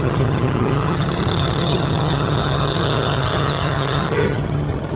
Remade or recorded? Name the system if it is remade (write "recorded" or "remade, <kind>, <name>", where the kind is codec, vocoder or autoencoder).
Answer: remade, vocoder, HiFi-GAN